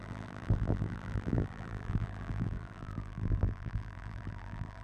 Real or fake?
fake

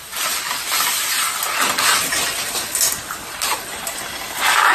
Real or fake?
real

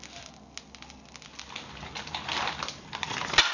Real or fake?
real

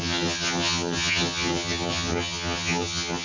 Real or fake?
fake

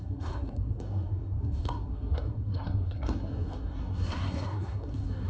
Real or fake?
fake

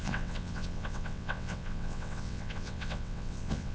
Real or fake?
fake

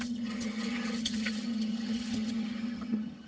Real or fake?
fake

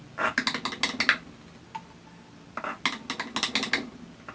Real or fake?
real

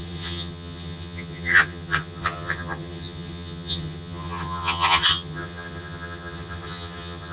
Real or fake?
fake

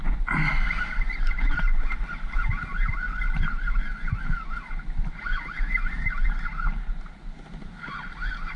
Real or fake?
real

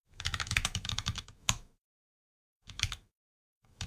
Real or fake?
fake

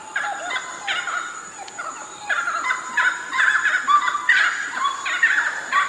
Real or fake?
real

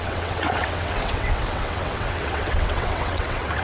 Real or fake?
fake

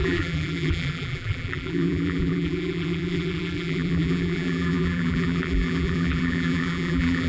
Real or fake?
fake